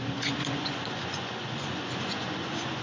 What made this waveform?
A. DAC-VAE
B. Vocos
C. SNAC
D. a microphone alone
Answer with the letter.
B